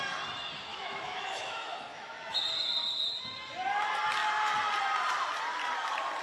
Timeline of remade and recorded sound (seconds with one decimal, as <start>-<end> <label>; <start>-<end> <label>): 0.0-0.7 recorded; 0.7-2.4 remade; 2.4-6.2 recorded

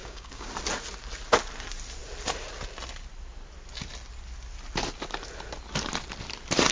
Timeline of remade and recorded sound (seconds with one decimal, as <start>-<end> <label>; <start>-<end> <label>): 0.0-0.5 remade; 0.5-6.7 recorded

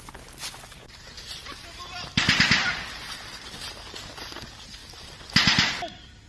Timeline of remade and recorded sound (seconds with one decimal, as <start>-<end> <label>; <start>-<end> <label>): 0.0-1.4 recorded; 1.4-3.4 remade; 3.4-6.3 recorded

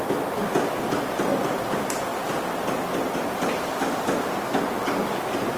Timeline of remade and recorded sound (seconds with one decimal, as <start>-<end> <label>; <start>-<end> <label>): 0.0-5.6 recorded

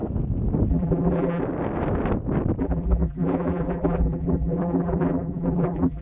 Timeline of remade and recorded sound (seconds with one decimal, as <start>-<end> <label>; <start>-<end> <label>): 0.0-0.7 recorded; 0.7-1.4 remade; 1.4-2.6 recorded; 2.6-6.0 remade

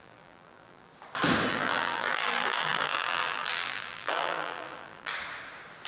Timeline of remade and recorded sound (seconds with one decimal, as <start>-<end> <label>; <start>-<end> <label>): 0.0-0.9 remade; 0.9-1.5 recorded; 1.5-5.1 remade; 5.1-5.9 recorded

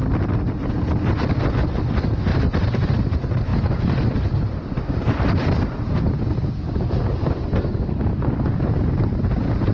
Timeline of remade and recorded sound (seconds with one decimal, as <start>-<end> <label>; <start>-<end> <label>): 0.0-2.3 recorded; 2.3-2.9 remade; 2.9-3.5 recorded; 3.5-6.7 remade; 6.7-8.1 recorded; 8.1-9.7 remade

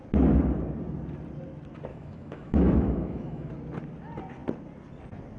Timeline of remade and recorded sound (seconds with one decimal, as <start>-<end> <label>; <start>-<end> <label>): 0.0-1.9 recorded; 1.9-3.5 remade; 3.5-5.4 recorded